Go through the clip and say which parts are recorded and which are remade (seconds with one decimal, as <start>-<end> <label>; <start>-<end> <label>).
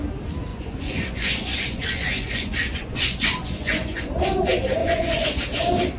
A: 0.0-0.5 recorded; 0.5-4.1 remade; 4.1-4.8 recorded; 4.8-5.4 remade; 5.4-6.0 recorded